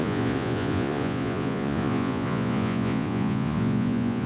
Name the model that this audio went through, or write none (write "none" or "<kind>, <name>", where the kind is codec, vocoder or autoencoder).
vocoder, Vocos